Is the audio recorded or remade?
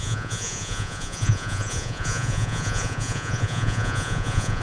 remade